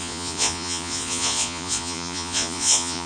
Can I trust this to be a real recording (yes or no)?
no